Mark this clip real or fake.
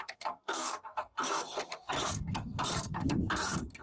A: fake